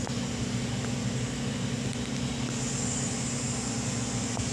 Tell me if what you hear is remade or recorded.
recorded